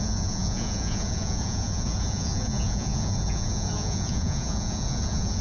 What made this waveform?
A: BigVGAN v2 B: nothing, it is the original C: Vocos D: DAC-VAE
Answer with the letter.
C